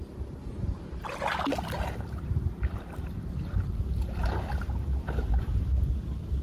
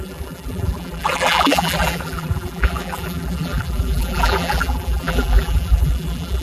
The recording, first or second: first